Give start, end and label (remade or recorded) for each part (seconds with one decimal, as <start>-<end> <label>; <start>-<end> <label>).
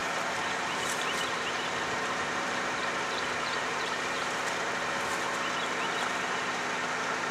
0.0-4.4 remade; 4.4-7.3 recorded